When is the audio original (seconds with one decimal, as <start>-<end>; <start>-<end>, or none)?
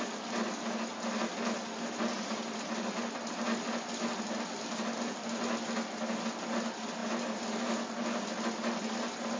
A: 0.0-9.4